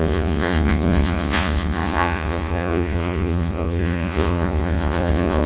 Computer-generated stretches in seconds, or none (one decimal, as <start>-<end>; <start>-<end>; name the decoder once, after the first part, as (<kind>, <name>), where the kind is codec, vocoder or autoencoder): 0.0-5.5 (vocoder, Vocos)